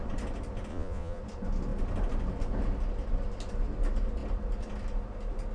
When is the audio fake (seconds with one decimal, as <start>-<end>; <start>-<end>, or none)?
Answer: 0.7-1.2